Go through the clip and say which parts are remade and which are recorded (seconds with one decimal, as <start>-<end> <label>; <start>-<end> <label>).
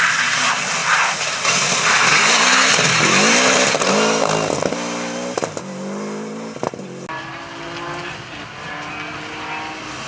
0.0-10.1 recorded